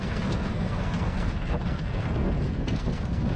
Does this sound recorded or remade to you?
remade